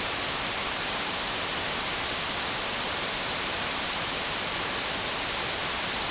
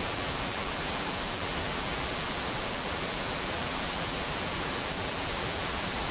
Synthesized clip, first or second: second